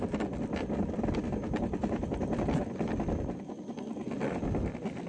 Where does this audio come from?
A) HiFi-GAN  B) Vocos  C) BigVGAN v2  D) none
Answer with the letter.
D